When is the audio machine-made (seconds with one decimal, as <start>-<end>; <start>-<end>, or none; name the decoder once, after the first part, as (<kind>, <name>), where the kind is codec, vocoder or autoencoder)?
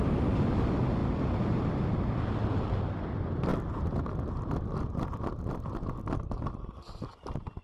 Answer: 1.0-1.8 (vocoder, BigVGAN v2)